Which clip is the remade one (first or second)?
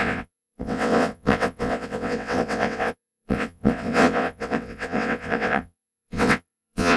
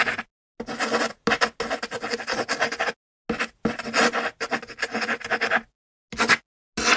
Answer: first